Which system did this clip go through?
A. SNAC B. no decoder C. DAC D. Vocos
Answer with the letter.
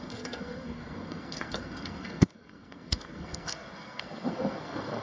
A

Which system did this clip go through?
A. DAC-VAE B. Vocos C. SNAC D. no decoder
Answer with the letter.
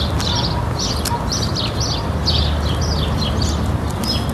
D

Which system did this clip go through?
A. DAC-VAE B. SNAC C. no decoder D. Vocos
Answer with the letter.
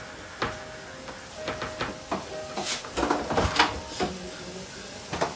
C